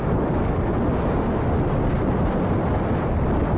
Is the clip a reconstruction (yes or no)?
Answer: no